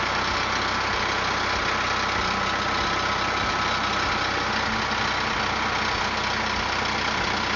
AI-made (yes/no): no